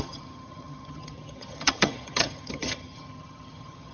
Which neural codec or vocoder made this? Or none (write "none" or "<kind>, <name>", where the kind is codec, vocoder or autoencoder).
vocoder, HiFi-GAN